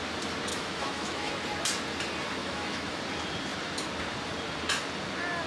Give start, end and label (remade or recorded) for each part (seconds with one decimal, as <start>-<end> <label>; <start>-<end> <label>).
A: 0.0-0.5 recorded; 0.5-1.3 remade; 1.3-2.4 recorded; 2.4-3.0 remade; 3.0-5.5 recorded